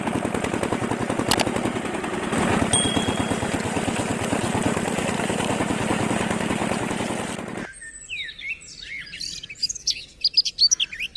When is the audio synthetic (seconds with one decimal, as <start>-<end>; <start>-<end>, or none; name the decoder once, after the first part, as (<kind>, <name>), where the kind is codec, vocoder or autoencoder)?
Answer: 9.6-10.2 (codec, DAC)